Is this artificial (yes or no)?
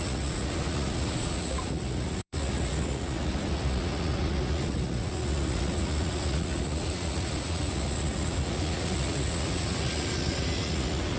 yes